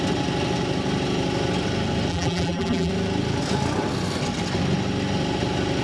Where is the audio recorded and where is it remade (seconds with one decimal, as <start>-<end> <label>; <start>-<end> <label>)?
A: 0.0-2.1 recorded; 2.1-2.9 remade; 2.9-5.8 recorded